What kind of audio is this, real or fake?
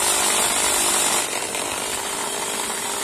real